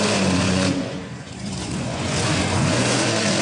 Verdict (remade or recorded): remade